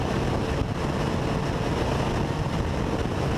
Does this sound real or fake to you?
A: real